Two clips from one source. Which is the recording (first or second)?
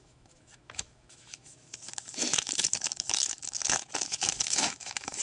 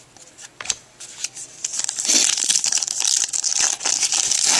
second